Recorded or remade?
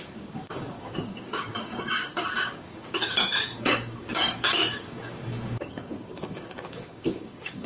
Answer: remade